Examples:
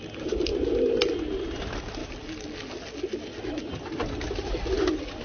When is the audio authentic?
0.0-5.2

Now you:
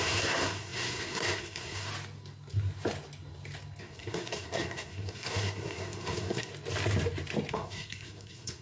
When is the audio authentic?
1.9-3.8; 6.5-7.5

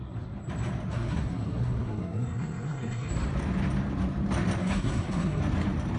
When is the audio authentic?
0.0-0.9; 3.1-4.6; 5.4-6.0

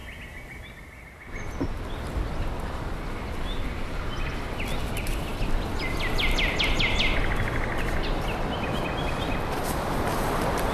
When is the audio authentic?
0.0-10.7